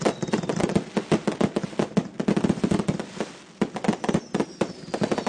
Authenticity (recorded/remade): recorded